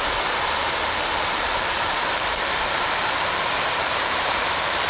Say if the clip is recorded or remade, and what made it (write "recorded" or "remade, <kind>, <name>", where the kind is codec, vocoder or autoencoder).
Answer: remade, vocoder, BigVGAN v2